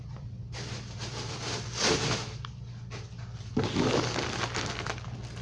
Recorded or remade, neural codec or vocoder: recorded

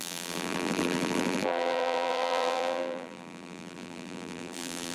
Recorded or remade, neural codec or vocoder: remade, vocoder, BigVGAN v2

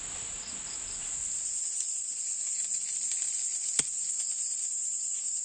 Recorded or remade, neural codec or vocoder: recorded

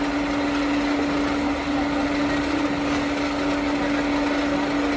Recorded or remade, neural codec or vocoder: recorded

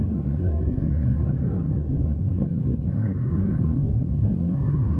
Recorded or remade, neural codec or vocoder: remade, codec, SNAC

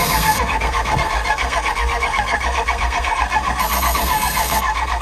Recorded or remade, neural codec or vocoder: remade, codec, SNAC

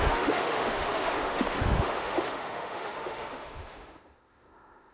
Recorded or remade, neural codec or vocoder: remade, autoencoder, DAC-VAE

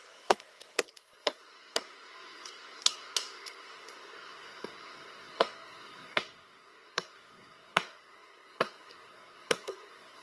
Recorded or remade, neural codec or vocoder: remade, codec, SNAC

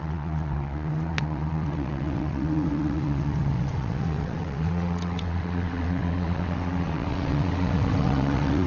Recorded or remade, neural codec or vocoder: remade, vocoder, WaveNeXt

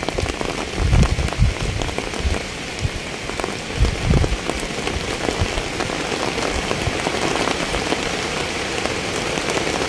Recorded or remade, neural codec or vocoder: recorded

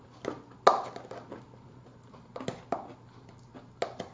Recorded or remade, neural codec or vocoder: recorded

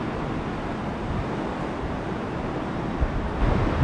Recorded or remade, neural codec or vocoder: recorded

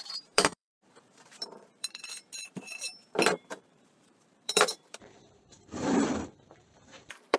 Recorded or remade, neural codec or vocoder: remade, vocoder, BigVGAN v2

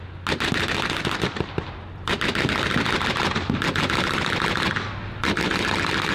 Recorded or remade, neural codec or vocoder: recorded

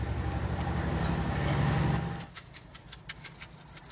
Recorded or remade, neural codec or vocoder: recorded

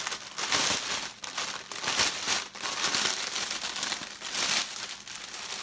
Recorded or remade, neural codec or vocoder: recorded